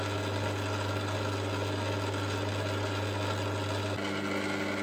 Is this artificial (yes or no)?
no